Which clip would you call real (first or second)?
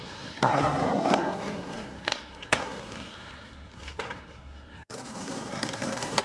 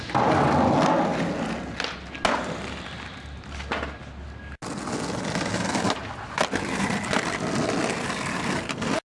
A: second